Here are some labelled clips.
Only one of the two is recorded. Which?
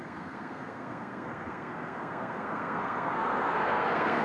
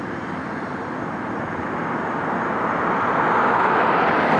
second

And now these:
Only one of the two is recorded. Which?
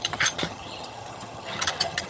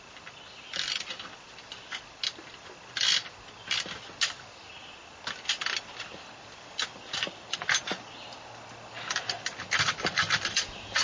second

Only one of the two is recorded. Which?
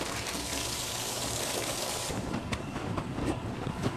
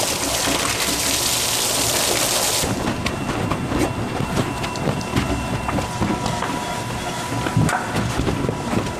second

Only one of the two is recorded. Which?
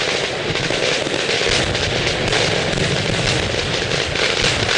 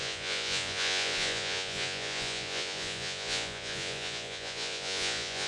first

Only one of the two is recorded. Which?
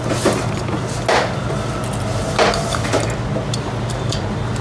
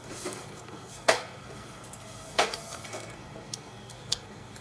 first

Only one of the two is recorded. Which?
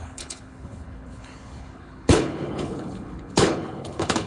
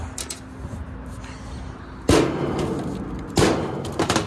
second